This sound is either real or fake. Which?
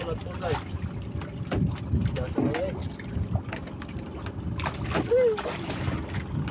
real